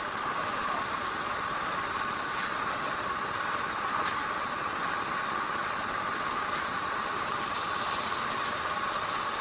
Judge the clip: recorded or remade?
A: recorded